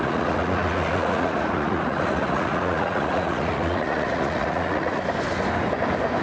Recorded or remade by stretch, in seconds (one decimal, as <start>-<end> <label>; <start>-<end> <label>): 0.0-5.0 remade; 5.0-6.2 recorded